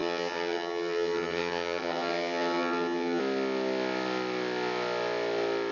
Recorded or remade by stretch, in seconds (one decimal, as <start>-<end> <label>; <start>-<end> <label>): 0.0-3.2 remade; 3.2-5.7 recorded